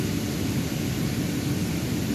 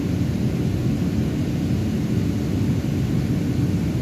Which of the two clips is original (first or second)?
second